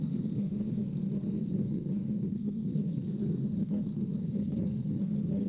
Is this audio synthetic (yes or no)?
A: yes